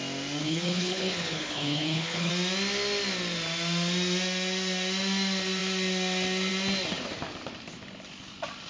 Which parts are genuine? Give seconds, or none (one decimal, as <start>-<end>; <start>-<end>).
0.0-0.4; 2.3-8.7